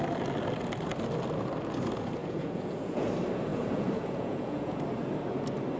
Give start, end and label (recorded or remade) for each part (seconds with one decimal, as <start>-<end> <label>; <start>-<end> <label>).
0.0-2.2 recorded; 2.2-3.1 remade; 3.1-3.5 recorded; 3.5-4.8 remade; 4.8-5.8 recorded